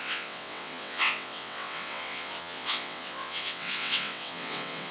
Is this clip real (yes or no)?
no